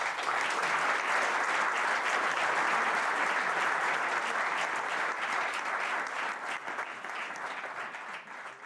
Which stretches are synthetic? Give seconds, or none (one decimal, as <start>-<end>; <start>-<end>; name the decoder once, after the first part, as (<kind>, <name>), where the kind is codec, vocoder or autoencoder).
none